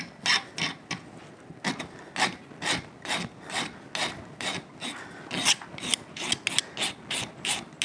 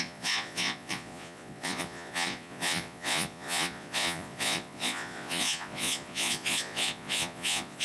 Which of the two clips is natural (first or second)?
first